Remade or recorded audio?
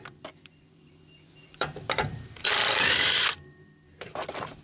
remade